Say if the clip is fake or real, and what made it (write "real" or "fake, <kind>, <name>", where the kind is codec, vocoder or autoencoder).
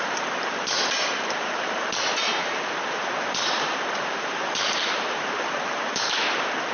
fake, vocoder, BigVGAN v2